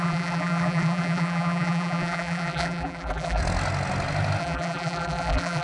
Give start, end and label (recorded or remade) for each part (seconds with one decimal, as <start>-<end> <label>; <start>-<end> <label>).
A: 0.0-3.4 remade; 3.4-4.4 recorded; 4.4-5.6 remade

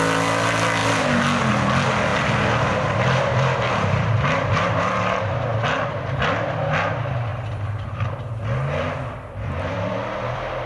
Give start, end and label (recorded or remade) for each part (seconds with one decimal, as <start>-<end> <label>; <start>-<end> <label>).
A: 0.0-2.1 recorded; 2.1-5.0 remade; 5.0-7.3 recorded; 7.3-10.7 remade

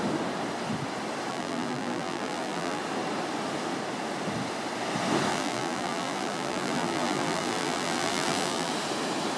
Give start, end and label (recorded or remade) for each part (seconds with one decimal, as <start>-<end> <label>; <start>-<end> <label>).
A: 0.0-1.3 recorded; 1.3-2.8 remade; 2.8-5.3 recorded; 5.3-8.7 remade; 8.7-9.4 recorded

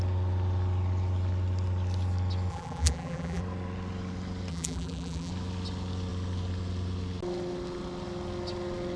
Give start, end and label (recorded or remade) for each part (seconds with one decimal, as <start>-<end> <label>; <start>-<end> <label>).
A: 0.0-2.5 recorded; 2.5-3.4 remade; 3.4-4.5 recorded; 4.5-5.3 remade; 5.3-9.0 recorded

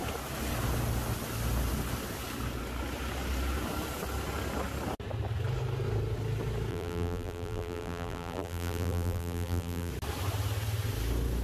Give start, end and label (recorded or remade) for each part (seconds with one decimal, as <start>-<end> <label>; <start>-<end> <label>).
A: 0.0-6.7 recorded; 6.7-9.9 remade; 9.9-11.4 recorded